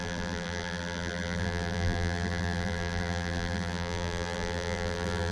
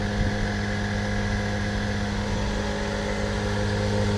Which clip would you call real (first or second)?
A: second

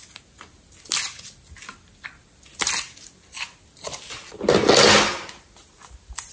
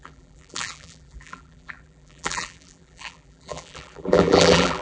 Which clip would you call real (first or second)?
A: first